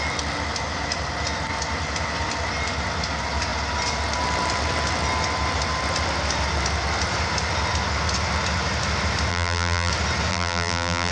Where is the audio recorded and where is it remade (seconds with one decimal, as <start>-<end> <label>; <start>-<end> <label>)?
0.0-9.3 recorded; 9.3-9.9 remade; 9.9-10.3 recorded; 10.3-11.1 remade